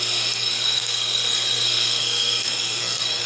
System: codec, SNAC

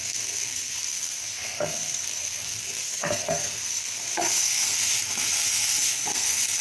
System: codec, SNAC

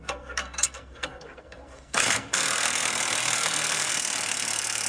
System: codec, SNAC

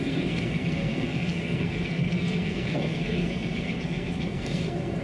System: codec, SNAC